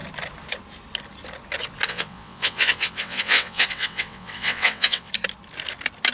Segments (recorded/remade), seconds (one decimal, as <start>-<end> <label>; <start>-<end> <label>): 0.0-1.9 recorded; 1.9-5.1 remade; 5.1-6.1 recorded